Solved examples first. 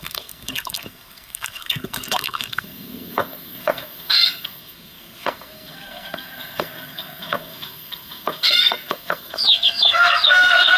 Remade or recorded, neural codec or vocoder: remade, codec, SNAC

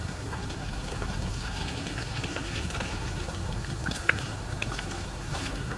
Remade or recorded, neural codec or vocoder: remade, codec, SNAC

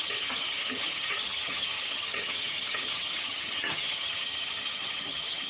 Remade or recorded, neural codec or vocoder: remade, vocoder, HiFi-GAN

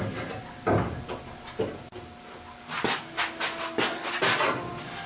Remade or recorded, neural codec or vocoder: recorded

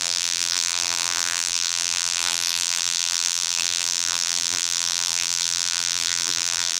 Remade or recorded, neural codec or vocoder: remade, vocoder, BigVGAN v2